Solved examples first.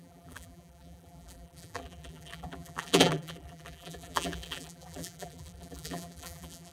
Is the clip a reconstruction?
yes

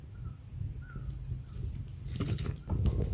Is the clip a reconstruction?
no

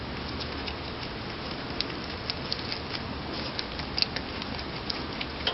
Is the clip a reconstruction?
no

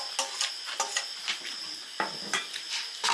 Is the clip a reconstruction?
no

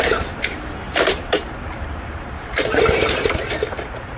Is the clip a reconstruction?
yes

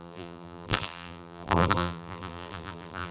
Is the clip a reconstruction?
yes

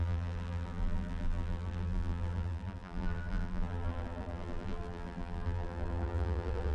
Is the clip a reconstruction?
yes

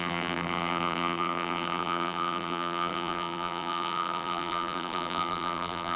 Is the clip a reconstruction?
yes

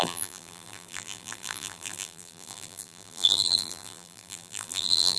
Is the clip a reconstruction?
yes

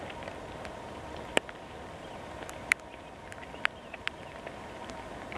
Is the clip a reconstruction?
yes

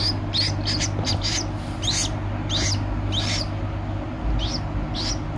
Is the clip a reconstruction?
no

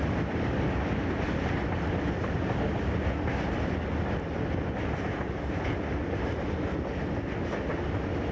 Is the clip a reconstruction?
no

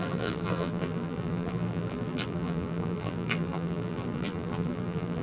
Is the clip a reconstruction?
yes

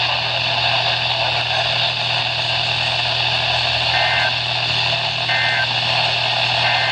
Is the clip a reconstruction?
no